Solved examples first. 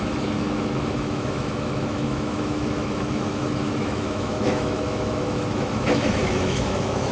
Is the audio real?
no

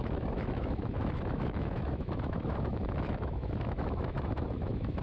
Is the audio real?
no